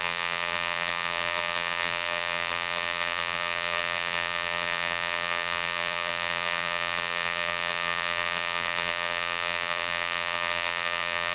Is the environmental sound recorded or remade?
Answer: remade